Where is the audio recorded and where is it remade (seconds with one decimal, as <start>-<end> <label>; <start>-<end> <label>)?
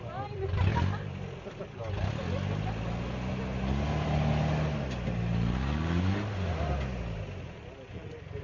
0.0-0.7 recorded; 0.7-1.6 remade; 1.6-8.4 recorded